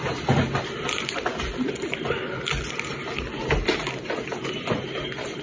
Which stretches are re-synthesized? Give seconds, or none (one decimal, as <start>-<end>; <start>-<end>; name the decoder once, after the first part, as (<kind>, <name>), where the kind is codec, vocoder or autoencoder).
none